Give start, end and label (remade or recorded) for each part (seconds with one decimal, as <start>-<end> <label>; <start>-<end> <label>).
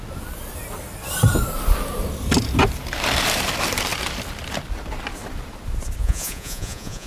0.0-6.0 recorded; 6.0-7.1 remade